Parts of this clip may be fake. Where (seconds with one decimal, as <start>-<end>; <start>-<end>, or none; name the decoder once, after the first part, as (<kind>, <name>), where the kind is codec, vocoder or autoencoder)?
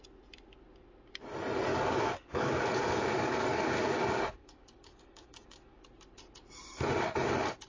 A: 1.7-5.8 (codec, DAC)